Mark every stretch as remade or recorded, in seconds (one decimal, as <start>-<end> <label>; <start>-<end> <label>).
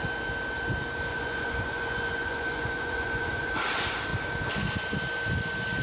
0.0-1.1 recorded; 1.1-3.5 remade; 3.5-5.8 recorded